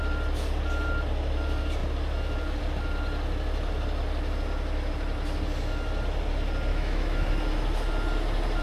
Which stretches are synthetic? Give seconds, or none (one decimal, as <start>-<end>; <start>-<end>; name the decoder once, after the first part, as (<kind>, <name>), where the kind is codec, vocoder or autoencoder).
6.7-7.3 (autoencoder, DAC-VAE)